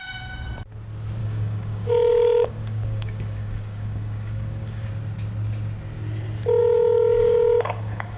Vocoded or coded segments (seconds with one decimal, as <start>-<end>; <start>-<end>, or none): 1.2-4.9; 6.6-8.2